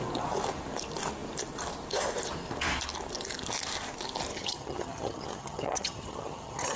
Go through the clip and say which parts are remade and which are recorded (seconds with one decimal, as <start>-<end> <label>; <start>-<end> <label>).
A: 0.0-4.3 recorded; 4.3-6.8 remade